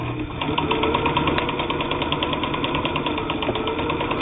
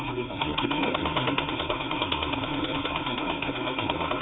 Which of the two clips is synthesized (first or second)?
second